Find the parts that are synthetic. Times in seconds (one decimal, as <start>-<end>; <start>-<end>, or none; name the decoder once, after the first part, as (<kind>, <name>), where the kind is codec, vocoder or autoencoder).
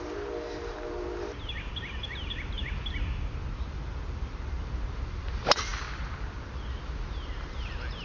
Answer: none